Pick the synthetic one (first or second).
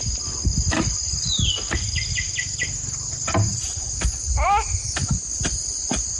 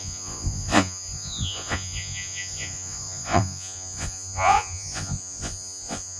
second